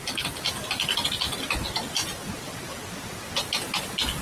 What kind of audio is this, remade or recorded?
recorded